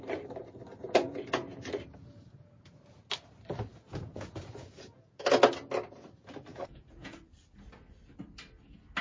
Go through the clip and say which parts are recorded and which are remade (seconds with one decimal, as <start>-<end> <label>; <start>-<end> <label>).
0.0-0.8 recorded; 0.8-2.8 remade; 2.8-3.7 recorded; 3.7-5.2 remade; 5.2-6.5 recorded; 6.5-7.2 remade; 7.2-9.0 recorded